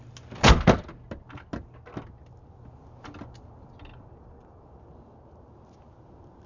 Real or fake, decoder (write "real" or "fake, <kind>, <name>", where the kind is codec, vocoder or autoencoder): real